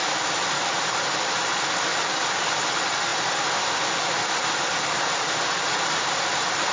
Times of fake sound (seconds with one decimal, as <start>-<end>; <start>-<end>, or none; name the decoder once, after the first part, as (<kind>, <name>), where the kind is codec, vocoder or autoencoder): none